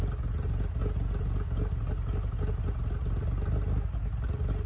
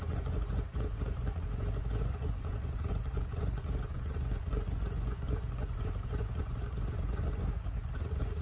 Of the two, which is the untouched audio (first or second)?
first